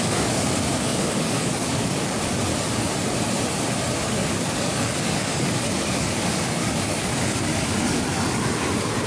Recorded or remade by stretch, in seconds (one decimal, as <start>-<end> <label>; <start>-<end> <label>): 0.0-2.5 remade; 2.5-4.0 recorded; 4.0-9.1 remade